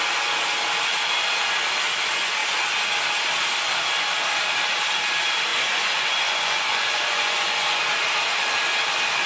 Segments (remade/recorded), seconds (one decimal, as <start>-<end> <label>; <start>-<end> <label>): 0.0-5.5 recorded; 5.5-7.8 remade; 7.8-9.3 recorded